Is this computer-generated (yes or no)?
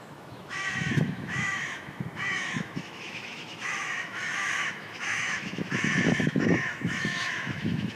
yes